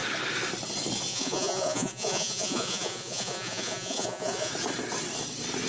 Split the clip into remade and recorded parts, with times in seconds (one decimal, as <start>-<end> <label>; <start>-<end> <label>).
0.0-1.1 recorded; 1.1-4.5 remade; 4.5-5.7 recorded